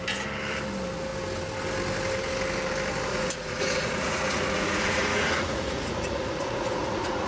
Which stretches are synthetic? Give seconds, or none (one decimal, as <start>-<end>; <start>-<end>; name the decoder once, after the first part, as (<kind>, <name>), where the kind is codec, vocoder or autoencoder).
3.1-7.3 (vocoder, Vocos)